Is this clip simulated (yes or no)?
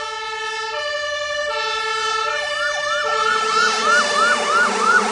no